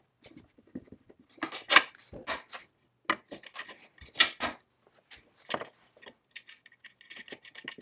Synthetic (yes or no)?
no